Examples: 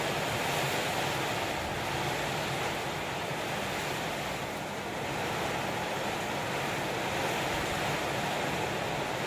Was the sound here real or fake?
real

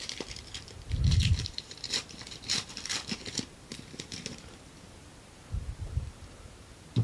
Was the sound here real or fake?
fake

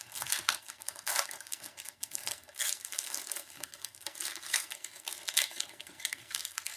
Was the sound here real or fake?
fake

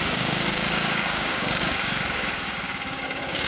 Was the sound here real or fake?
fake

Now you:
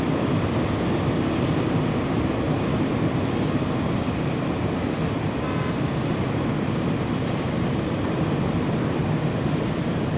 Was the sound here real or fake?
real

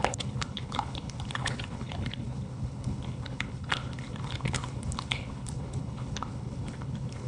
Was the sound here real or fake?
fake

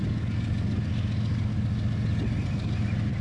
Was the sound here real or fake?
real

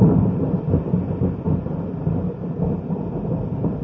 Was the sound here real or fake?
real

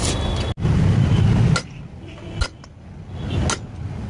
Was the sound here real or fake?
real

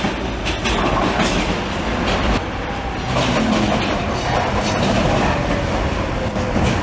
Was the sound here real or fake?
real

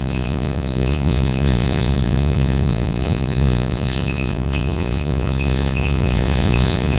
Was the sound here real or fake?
fake